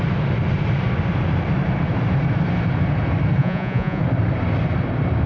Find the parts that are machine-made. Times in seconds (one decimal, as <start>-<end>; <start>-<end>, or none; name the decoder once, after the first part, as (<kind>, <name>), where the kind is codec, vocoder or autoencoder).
3.4-4.0 (vocoder, Vocos)